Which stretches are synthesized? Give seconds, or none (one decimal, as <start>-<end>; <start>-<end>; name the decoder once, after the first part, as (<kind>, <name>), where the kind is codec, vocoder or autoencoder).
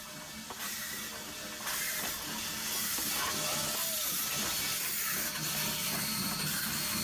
none